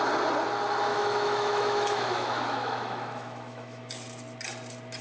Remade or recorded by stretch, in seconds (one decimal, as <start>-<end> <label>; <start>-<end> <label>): 0.0-0.9 recorded; 0.9-3.9 remade; 3.9-5.0 recorded

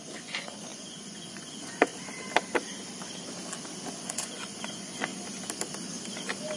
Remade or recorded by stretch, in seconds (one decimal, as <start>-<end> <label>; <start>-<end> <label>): 0.0-1.9 remade; 1.9-3.9 recorded; 3.9-5.1 remade; 5.1-6.6 recorded

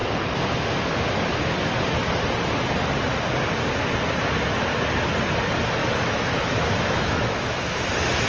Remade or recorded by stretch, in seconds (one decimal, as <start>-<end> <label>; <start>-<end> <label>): 0.0-5.8 recorded; 5.8-7.9 remade; 7.9-8.3 recorded

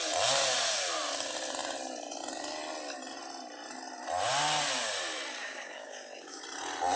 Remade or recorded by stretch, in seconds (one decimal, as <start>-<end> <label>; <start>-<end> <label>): 0.0-5.4 recorded; 5.4-6.4 remade; 6.4-7.0 recorded

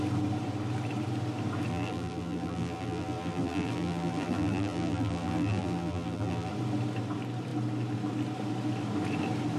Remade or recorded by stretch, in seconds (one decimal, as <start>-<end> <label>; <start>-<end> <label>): 0.0-1.7 recorded; 1.7-6.5 remade; 6.5-9.6 recorded